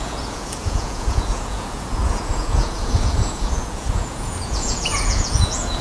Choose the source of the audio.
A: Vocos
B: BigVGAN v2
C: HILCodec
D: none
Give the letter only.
A